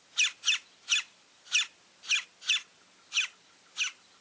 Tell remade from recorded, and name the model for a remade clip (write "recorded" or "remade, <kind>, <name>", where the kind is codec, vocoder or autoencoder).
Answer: recorded